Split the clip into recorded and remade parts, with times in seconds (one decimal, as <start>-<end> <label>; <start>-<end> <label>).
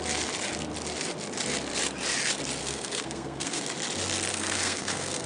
0.0-2.6 recorded; 2.6-3.6 remade; 3.6-4.3 recorded; 4.3-5.3 remade